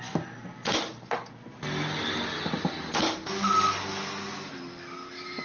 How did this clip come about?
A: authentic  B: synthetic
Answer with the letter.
A